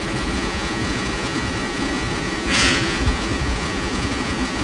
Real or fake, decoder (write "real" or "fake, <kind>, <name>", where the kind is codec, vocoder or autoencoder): fake, vocoder, Vocos